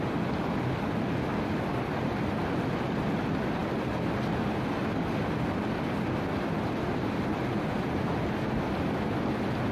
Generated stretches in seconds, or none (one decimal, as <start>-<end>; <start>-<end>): none